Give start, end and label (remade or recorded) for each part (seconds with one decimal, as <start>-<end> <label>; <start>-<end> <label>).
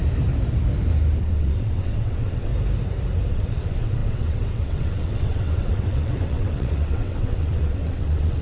0.0-1.2 recorded; 1.2-2.5 remade; 2.5-3.3 recorded; 3.3-8.4 remade